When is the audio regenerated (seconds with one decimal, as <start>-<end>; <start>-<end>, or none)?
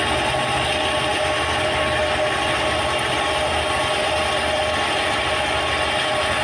none